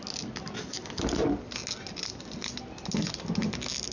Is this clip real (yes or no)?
yes